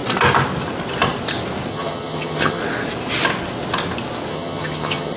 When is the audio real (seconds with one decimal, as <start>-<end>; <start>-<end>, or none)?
0.0-1.7; 2.6-4.3